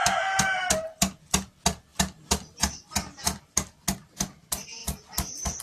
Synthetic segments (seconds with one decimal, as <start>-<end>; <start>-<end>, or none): 1.9-3.4; 4.8-5.6